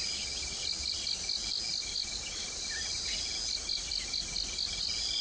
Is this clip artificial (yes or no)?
no